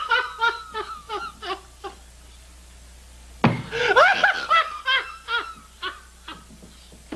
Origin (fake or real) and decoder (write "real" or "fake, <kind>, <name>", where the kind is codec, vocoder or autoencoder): real